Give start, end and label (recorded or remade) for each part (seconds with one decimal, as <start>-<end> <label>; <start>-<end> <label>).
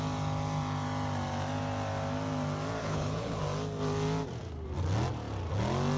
0.0-2.8 recorded; 2.8-3.4 remade; 3.4-6.0 recorded